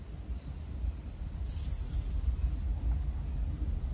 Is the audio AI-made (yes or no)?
no